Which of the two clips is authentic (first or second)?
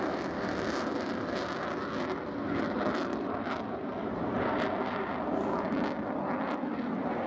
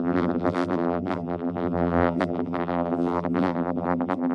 first